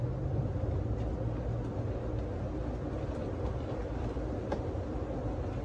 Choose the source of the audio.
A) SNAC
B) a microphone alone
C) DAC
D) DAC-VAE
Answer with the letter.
B